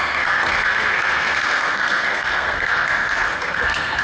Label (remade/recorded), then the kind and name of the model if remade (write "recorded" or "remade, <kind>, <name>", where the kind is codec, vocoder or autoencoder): remade, codec, SNAC